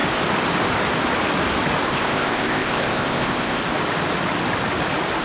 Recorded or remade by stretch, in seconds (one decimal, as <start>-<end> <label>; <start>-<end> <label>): 0.0-1.9 recorded; 1.9-3.6 remade; 3.6-5.2 recorded